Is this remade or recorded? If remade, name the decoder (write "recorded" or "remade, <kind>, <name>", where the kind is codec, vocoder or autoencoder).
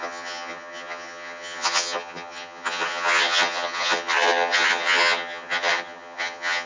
remade, vocoder, HiFi-GAN